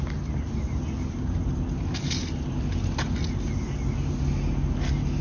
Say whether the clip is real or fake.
real